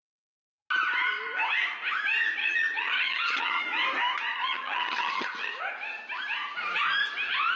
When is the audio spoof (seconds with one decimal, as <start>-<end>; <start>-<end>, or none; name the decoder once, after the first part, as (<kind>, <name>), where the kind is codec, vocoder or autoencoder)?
2.4-3.6 (vocoder, HiFi-GAN); 4.3-5.5